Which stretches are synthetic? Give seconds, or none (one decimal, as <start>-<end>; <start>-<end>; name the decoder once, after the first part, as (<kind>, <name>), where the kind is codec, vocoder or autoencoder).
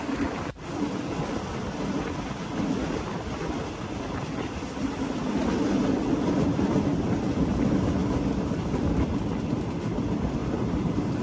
10.4-11.2 (vocoder, BigVGAN v2)